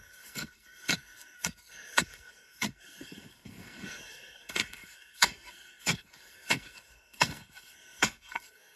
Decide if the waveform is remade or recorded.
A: remade